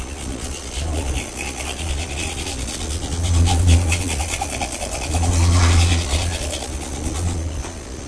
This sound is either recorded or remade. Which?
remade